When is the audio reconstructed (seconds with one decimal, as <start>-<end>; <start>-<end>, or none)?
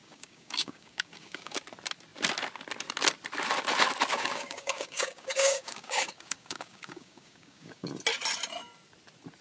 0.0-1.6; 4.1-7.9